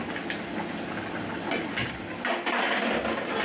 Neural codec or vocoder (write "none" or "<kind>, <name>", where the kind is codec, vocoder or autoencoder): none